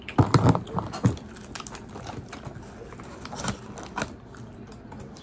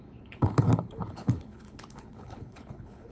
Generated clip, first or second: second